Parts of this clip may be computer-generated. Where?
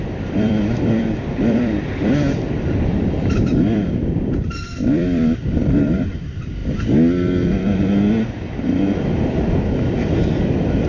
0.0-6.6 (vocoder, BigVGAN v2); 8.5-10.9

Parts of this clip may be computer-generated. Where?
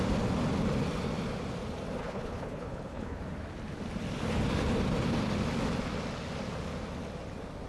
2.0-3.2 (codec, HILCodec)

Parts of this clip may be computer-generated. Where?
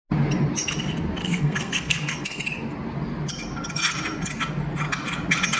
1.2-2.4 (codec, SNAC)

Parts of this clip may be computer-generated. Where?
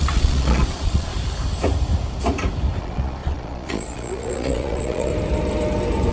0.0-1.1 (vocoder, Vocos); 2.8-5.1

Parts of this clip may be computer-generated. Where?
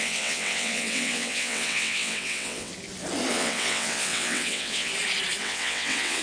0.0-2.7 (vocoder, WaveNeXt); 3.3-4.9; 5.4-6.2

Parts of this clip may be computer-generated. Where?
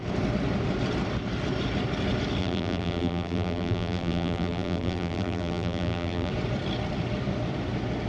2.4-6.3 (vocoder, BigVGAN v2)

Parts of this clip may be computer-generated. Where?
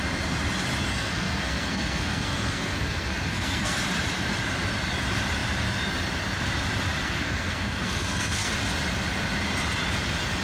0.9-3.8 (codec, SNAC); 7.0-8.5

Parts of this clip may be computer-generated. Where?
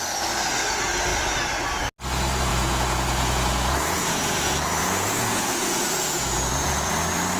2.5-6.9 (vocoder, Vocos)